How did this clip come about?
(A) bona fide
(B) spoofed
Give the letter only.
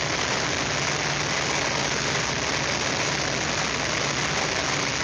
A